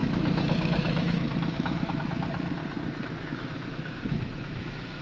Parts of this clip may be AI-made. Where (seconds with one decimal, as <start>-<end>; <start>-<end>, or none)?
0.0-2.6; 3.2-5.0